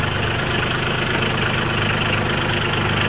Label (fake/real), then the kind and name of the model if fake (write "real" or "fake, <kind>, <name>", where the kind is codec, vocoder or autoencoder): real